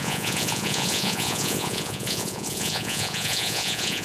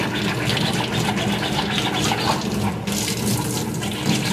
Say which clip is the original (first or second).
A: second